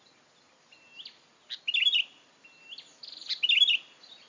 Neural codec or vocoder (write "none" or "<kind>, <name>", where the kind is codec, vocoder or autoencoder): none